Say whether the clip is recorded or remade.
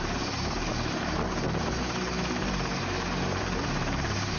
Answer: remade